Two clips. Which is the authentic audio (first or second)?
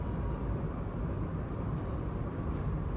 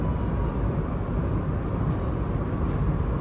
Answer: second